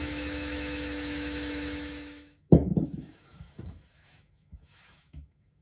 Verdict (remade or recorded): remade